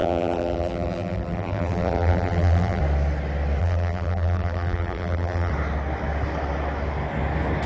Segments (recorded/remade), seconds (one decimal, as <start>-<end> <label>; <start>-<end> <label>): 0.0-2.8 remade; 2.8-3.6 recorded; 3.6-5.5 remade; 5.5-7.7 recorded